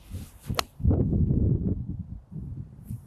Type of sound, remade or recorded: recorded